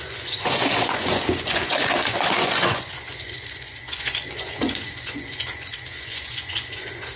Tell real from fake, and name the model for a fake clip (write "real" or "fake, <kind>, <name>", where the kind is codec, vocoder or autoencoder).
fake, vocoder, Vocos